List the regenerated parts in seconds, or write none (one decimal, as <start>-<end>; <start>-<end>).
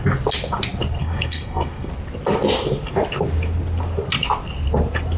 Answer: 1.0-1.9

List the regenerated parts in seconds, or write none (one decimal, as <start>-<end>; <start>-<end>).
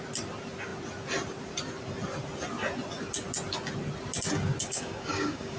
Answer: 4.6-5.6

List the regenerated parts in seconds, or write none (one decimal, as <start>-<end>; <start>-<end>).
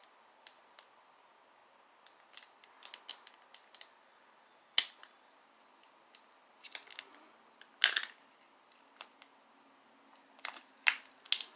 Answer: none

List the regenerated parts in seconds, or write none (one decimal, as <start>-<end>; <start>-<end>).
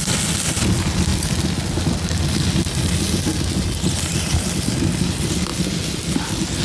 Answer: none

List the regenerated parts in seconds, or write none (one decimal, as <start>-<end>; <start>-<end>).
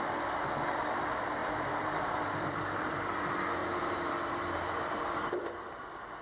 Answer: 1.4-3.0; 3.6-5.7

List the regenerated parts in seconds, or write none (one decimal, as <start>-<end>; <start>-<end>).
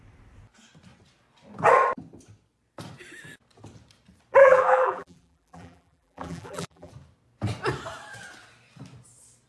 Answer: 4.4-6.9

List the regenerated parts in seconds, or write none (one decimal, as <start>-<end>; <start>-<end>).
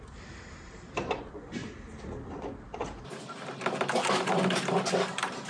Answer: 0.0-1.6; 4.9-5.5